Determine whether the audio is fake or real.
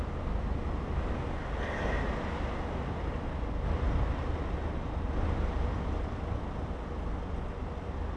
real